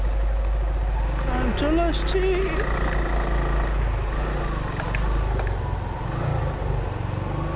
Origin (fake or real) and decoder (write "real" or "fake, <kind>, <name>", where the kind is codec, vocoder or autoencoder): real